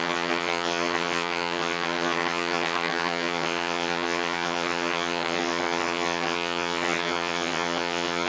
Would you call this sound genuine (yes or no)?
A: no